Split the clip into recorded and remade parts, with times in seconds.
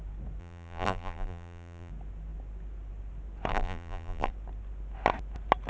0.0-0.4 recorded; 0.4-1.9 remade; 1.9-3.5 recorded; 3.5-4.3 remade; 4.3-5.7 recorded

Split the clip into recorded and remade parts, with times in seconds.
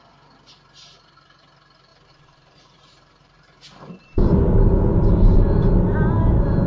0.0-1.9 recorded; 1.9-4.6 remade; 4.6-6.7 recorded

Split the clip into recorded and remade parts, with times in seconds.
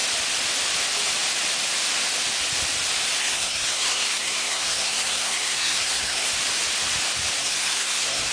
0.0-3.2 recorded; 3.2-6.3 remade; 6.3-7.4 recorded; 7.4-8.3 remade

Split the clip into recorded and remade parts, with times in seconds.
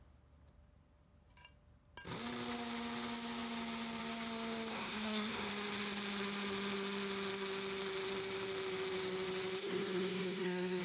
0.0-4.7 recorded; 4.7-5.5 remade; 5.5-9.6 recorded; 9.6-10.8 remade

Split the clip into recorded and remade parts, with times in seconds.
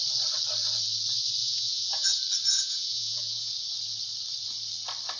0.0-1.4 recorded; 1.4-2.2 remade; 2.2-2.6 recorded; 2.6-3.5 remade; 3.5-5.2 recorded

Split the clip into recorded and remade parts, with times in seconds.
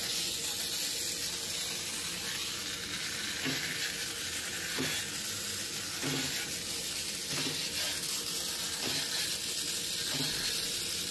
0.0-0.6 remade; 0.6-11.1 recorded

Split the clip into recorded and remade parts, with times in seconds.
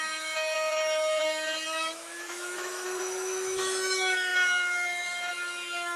0.0-6.0 remade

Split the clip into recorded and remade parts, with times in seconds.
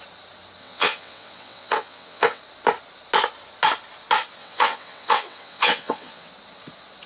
0.0-0.6 recorded; 0.6-2.4 remade; 2.4-4.4 recorded; 4.4-6.3 remade; 6.3-7.1 recorded